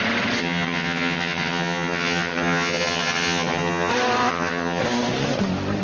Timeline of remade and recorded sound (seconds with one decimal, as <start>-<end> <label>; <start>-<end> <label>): 0.0-0.4 recorded; 0.4-3.9 remade; 3.9-4.3 recorded; 4.3-4.8 remade; 4.8-5.8 recorded